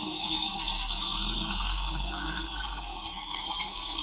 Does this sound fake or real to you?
fake